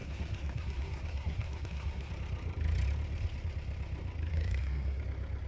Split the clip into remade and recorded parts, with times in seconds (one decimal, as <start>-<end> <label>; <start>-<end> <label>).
0.0-2.1 remade; 2.1-4.3 recorded; 4.3-5.0 remade; 5.0-5.5 recorded